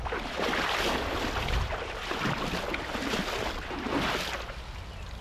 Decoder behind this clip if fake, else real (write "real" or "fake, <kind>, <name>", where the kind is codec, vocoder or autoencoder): real